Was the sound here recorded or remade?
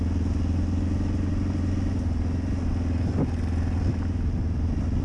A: recorded